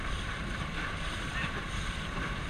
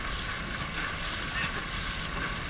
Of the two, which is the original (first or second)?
second